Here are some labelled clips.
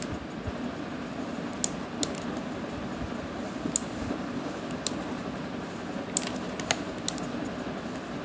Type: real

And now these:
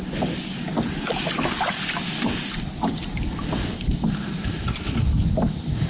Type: real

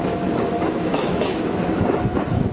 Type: fake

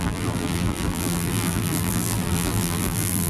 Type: fake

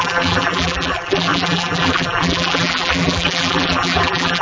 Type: fake